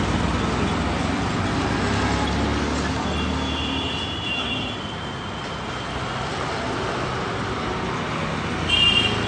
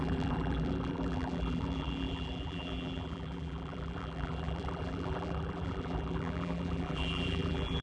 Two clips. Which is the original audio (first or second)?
first